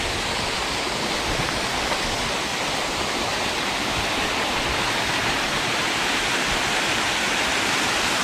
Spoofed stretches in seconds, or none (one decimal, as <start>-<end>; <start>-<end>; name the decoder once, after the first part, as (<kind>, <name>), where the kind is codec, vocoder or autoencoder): 2.5-6.6 (vocoder, BigVGAN v2)